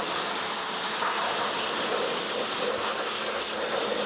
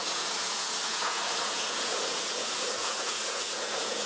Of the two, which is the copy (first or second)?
second